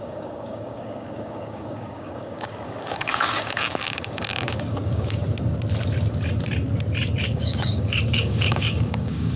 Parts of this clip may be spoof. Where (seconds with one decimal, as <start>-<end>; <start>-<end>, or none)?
0.0-5.2; 7.2-9.4